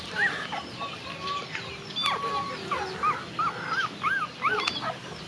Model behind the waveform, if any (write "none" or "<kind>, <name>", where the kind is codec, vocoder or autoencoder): none